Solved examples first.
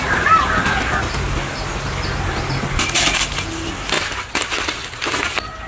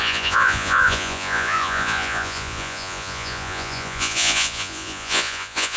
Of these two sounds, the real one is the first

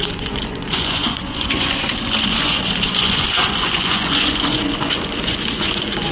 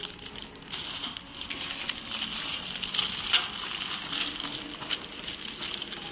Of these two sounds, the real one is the second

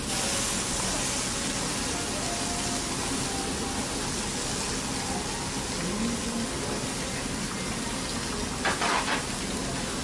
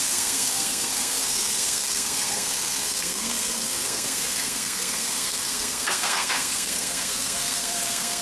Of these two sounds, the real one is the first